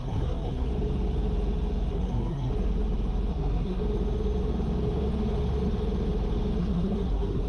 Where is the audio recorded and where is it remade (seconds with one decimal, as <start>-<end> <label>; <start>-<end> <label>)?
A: 0.0-0.7 remade; 0.7-1.9 recorded; 1.9-2.5 remade; 2.5-3.3 recorded; 3.3-3.8 remade; 3.8-6.6 recorded; 6.6-7.5 remade